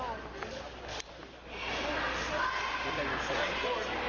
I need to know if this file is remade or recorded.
recorded